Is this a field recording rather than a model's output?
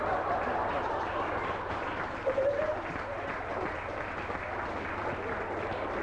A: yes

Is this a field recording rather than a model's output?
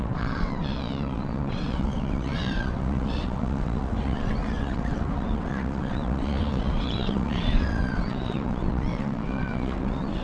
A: no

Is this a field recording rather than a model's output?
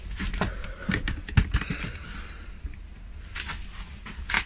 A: yes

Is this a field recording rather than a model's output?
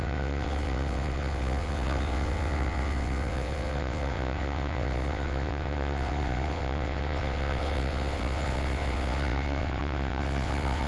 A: no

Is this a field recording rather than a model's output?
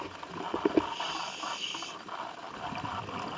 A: yes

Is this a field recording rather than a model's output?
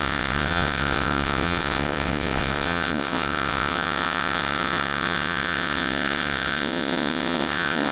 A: no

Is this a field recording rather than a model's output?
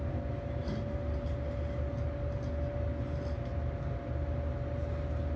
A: yes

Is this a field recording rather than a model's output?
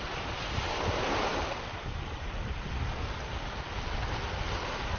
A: yes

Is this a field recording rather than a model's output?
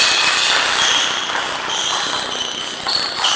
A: yes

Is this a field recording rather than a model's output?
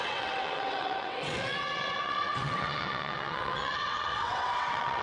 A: no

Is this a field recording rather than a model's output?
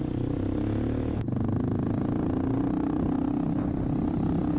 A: yes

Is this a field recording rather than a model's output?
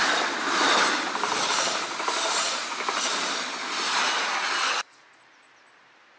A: yes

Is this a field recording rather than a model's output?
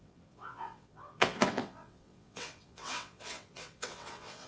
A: no